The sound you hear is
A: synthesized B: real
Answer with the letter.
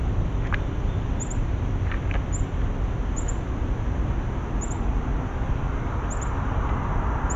B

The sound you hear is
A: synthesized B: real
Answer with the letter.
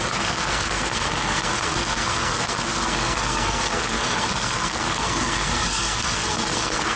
A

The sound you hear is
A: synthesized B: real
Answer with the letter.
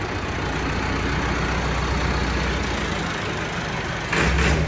B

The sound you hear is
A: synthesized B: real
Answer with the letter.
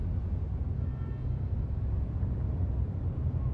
B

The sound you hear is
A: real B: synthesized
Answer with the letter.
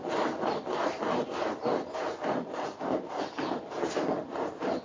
B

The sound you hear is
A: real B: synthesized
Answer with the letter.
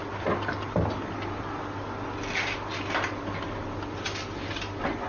A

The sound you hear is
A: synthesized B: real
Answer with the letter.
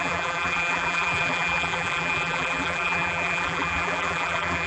A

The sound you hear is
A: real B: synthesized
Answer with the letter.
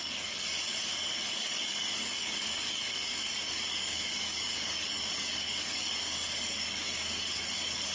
B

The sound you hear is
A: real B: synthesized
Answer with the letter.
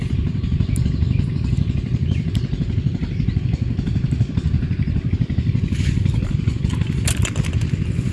A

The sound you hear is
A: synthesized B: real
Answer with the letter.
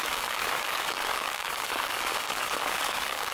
A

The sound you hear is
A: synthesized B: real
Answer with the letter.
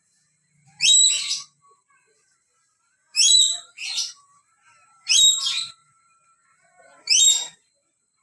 A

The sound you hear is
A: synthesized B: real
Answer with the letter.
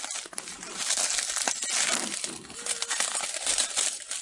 B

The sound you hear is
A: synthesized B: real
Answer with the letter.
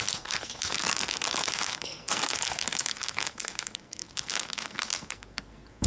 A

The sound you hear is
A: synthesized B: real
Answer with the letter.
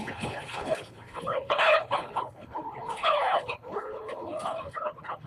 A